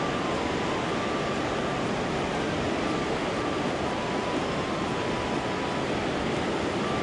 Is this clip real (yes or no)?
yes